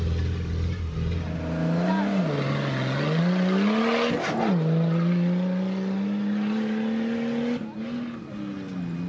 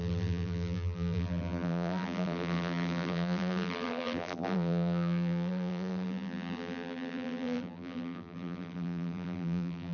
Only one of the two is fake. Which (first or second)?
second